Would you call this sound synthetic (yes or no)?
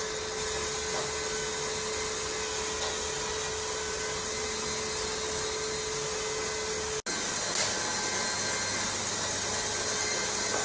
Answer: no